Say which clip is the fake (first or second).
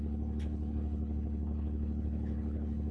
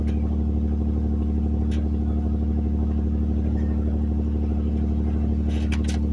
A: first